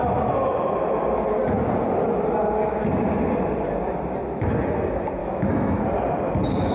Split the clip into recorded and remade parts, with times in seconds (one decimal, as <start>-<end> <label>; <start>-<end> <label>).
0.0-5.2 recorded; 5.2-5.8 remade; 5.8-6.7 recorded